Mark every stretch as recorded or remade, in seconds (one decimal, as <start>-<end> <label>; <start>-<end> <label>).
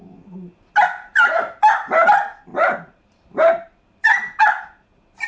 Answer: 0.0-1.1 recorded; 1.1-1.8 remade; 1.8-2.5 recorded; 2.5-4.0 remade; 4.0-5.3 recorded